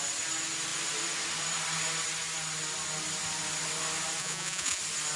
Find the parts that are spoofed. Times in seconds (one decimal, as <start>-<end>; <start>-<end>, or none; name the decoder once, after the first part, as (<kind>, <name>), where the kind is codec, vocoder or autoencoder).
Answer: 4.2-4.8 (vocoder, Vocos)